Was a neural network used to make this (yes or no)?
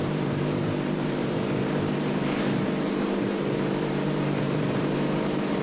yes